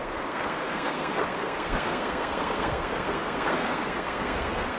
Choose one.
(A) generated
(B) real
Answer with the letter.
A